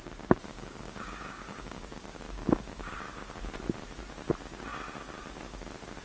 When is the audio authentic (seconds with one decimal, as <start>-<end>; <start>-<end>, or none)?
0.0-0.5; 3.4-6.0